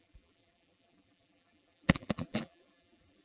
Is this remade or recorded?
remade